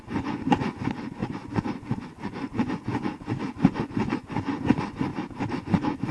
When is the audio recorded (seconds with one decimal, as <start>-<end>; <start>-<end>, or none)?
5.1-5.6